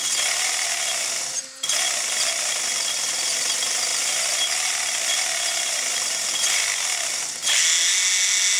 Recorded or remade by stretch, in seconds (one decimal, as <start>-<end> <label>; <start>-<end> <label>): 0.0-8.6 recorded